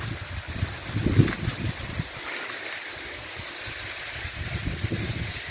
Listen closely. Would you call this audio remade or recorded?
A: recorded